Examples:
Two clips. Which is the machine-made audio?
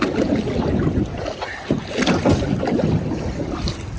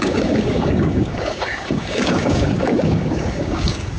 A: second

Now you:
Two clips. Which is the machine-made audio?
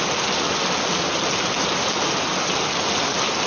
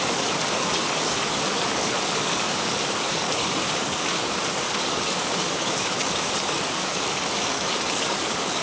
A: second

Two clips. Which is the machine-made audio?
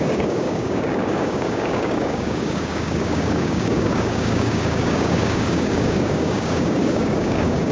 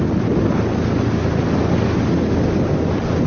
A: first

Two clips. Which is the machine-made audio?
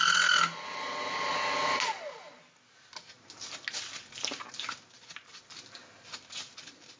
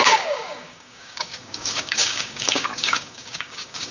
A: second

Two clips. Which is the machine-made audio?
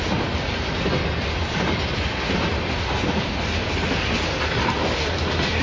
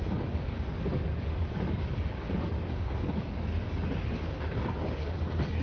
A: second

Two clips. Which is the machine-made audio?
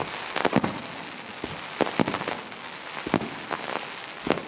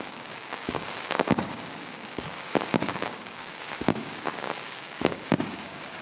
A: second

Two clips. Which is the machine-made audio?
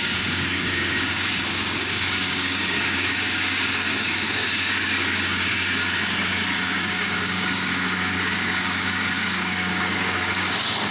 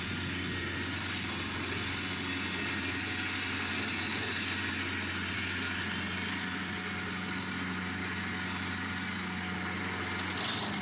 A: first